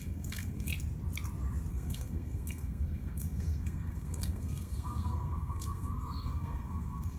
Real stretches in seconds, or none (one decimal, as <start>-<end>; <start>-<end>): 0.7-1.7